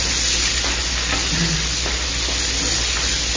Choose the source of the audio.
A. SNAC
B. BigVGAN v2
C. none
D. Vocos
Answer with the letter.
C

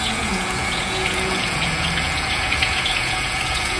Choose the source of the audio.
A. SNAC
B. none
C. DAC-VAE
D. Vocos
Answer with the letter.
D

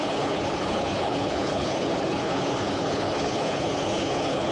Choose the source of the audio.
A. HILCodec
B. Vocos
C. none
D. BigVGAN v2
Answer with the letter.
A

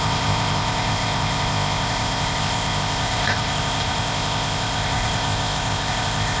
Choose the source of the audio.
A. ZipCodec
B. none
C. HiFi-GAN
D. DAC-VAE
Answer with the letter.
A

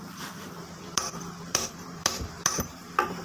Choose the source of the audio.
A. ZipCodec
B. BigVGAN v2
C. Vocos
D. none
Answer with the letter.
B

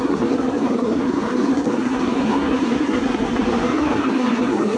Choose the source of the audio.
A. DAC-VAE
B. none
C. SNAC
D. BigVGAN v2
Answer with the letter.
C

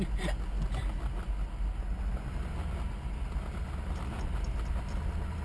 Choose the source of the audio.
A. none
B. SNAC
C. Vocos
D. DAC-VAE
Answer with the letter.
A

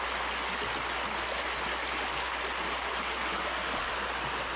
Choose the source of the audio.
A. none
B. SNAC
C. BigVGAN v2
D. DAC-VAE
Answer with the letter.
A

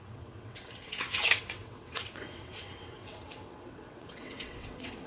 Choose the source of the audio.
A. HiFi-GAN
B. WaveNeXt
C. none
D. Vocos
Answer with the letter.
B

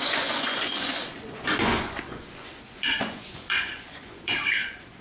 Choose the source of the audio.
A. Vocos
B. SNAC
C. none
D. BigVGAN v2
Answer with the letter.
A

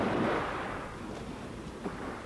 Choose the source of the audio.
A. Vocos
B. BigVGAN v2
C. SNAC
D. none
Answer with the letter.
D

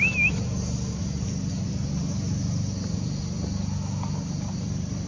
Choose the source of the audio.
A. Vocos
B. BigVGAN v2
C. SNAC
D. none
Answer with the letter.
D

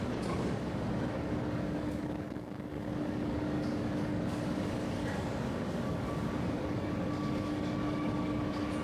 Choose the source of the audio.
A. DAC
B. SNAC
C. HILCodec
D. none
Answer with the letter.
A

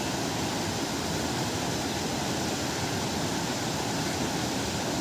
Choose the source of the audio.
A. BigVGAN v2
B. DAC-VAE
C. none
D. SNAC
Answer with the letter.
C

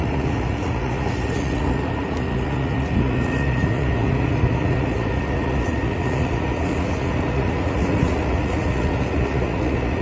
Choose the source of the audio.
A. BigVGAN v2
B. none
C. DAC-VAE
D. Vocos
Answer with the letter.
D